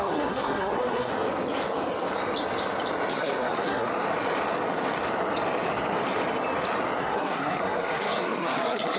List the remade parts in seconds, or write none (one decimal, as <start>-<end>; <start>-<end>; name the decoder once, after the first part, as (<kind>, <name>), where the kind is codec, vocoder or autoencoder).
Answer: 0.0-1.1 (codec, SNAC); 3.1-3.9; 7.0-9.0